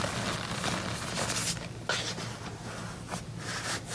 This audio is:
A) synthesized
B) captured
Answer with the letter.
B